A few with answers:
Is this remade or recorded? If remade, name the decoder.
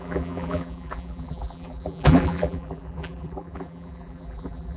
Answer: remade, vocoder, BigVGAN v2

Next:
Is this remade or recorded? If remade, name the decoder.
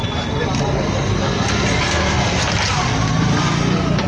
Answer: recorded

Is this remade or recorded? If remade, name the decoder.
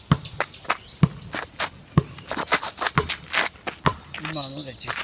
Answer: recorded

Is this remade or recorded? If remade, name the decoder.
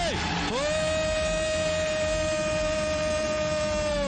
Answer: recorded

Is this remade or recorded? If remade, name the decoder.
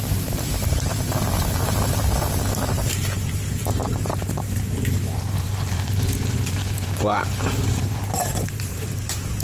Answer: remade, vocoder, BigVGAN v2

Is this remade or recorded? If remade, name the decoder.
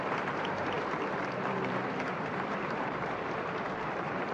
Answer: remade, vocoder, BigVGAN v2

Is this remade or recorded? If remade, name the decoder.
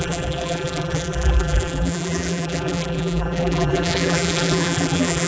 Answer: remade, vocoder, BigVGAN v2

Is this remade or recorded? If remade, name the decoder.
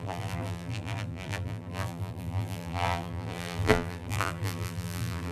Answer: remade, vocoder, BigVGAN v2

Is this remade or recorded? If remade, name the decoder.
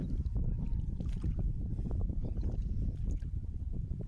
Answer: remade, vocoder, BigVGAN v2